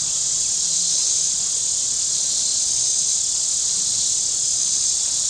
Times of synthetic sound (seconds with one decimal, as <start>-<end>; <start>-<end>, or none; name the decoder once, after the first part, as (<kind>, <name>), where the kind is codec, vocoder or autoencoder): none